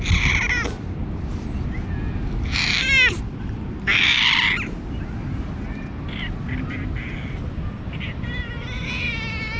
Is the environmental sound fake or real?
real